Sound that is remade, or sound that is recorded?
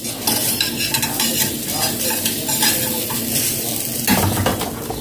recorded